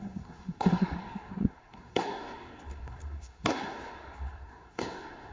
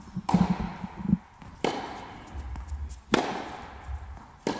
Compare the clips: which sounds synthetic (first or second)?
first